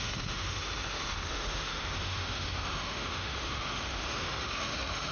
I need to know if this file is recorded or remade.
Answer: remade